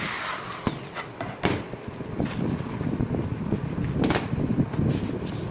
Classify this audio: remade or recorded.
recorded